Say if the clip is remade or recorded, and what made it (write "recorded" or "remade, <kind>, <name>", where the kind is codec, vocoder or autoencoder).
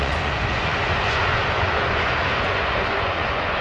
remade, vocoder, Vocos